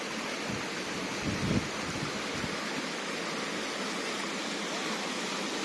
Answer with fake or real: real